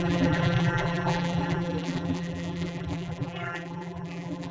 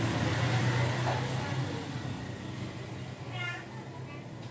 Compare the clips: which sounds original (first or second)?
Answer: second